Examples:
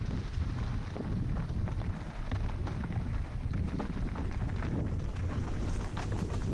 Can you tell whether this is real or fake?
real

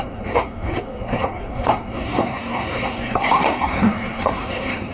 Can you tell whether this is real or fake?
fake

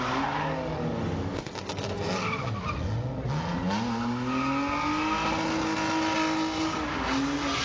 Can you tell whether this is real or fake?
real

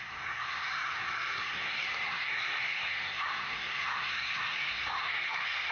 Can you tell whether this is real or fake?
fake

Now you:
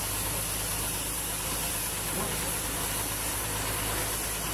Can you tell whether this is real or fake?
real